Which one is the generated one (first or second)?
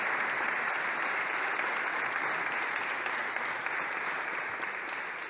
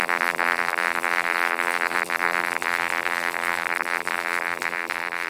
second